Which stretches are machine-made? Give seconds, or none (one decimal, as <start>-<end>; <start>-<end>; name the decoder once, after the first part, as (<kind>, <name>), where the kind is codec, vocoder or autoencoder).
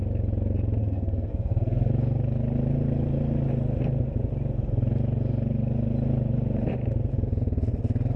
0.8-1.9 (codec, SNAC)